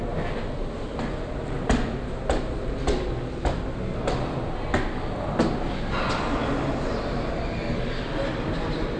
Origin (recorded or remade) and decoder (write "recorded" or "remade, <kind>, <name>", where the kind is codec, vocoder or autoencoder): recorded